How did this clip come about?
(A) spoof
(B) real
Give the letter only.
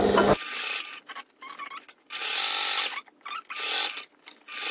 B